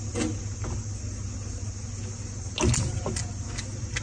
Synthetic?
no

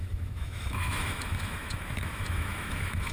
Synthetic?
yes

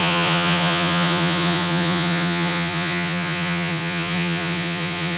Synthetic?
yes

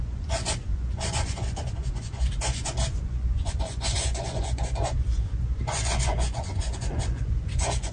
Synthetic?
yes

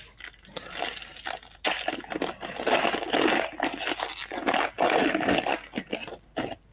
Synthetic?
no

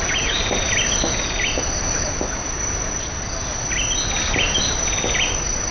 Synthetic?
no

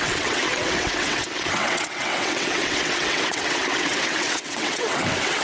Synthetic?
yes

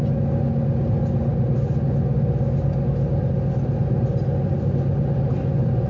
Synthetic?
no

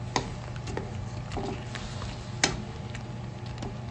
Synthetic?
no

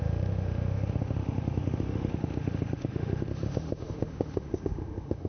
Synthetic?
yes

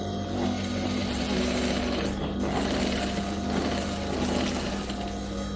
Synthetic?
no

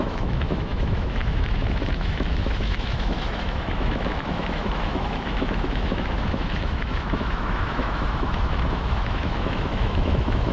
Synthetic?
yes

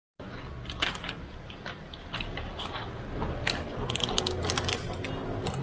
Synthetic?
no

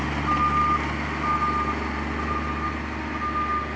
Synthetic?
no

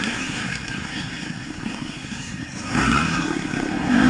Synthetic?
yes